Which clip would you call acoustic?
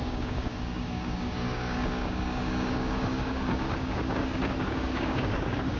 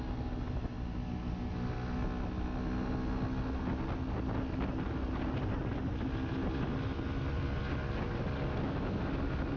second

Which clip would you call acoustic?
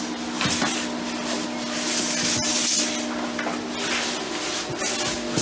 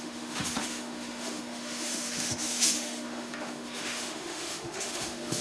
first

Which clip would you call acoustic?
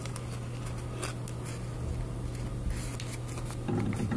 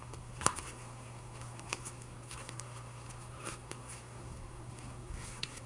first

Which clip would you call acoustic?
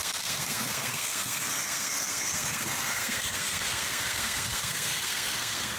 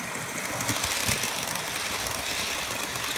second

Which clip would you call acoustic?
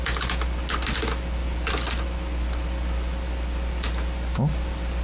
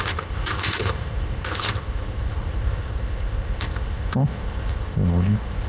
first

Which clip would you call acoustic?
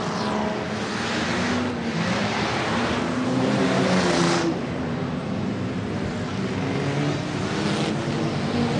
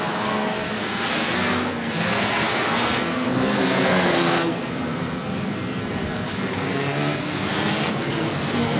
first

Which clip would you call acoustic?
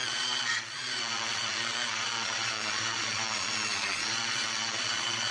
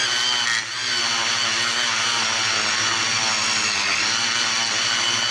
second